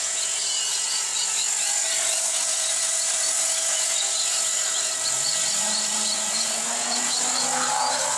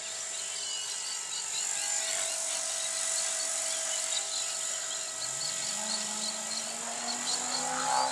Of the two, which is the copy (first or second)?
first